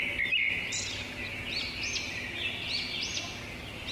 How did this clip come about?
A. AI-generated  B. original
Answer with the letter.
B